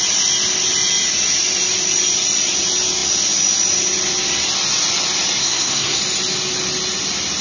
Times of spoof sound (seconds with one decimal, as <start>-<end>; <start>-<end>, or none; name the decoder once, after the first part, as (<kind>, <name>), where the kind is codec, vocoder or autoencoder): 5.4-6.0 (codec, SNAC)